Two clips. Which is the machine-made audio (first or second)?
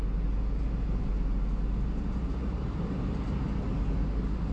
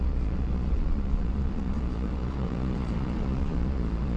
second